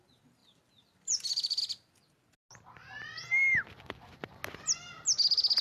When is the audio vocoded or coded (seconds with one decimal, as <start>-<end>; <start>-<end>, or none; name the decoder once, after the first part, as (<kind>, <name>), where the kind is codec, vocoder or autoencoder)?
0.4-1.6 (vocoder, BigVGAN v2)